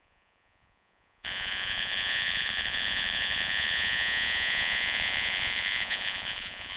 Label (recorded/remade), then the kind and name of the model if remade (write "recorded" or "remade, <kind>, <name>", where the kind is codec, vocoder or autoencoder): remade, vocoder, Vocos